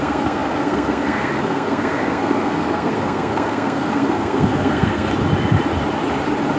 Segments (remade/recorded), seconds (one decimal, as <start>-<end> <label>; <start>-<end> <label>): 0.0-5.1 remade; 5.1-6.6 recorded